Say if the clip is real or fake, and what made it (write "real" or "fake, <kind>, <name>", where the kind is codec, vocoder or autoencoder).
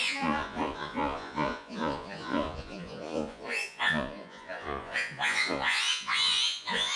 fake, vocoder, Vocos